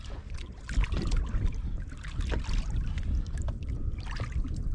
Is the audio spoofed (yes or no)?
no